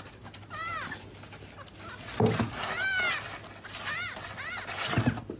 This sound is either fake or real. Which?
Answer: real